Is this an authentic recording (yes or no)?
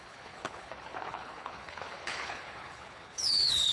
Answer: no